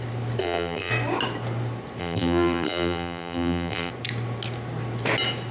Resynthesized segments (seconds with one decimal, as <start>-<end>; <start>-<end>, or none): 0.4-0.9; 2.0-3.9

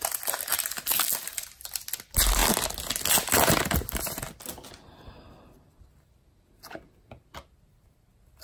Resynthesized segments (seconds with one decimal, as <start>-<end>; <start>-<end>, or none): none